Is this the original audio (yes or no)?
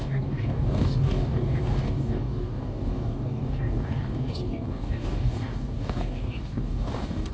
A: no